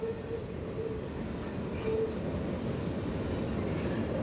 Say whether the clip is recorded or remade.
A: recorded